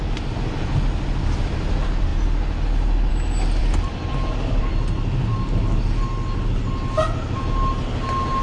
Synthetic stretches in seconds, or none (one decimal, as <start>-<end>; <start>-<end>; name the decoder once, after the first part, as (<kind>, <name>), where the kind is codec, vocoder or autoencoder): 3.6-5.0 (vocoder, BigVGAN v2)